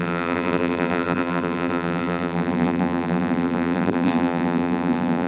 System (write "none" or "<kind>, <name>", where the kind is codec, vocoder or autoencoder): vocoder, BigVGAN v2